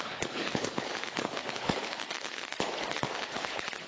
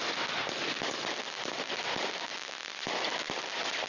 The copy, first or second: first